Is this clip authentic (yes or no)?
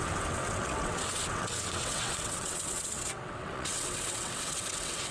no